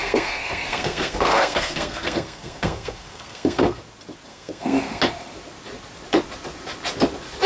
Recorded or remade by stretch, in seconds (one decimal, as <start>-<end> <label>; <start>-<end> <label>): 0.0-3.8 remade; 3.8-4.3 recorded; 4.3-5.0 remade; 5.0-7.5 recorded